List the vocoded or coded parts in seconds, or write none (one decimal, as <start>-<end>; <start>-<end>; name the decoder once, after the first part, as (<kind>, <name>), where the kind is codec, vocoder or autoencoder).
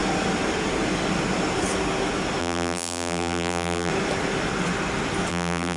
2.4-3.9 (vocoder, BigVGAN v2); 5.3-5.8